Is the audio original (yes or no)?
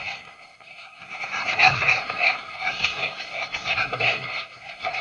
no